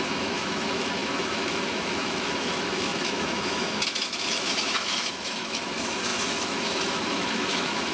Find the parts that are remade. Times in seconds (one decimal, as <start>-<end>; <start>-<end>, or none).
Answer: 0.0-7.9